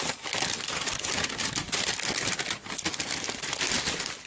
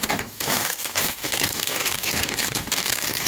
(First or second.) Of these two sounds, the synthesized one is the second